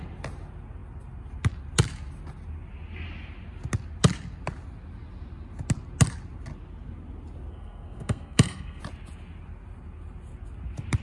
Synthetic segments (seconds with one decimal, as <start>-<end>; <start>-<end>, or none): 7.5-8.8